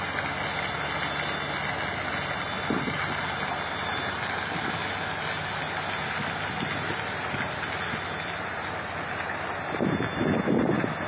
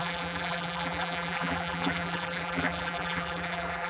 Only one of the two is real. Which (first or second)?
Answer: first